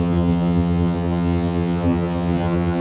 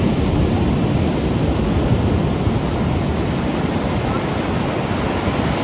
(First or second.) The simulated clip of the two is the first